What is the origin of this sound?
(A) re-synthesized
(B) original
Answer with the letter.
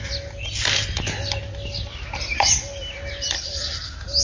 B